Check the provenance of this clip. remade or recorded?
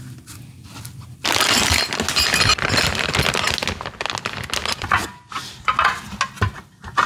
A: recorded